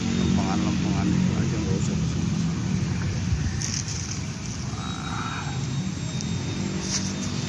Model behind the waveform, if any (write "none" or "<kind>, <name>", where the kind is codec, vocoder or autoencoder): none